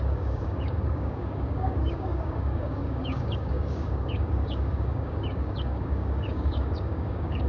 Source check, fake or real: fake